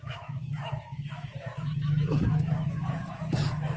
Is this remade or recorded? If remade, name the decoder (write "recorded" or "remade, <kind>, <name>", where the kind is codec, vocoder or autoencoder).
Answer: remade, autoencoder, DAC-VAE